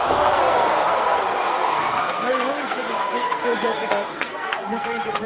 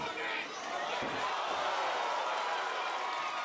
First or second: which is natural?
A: second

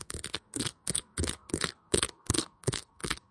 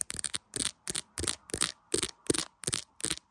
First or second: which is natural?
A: second